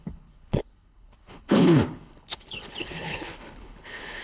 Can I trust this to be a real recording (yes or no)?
no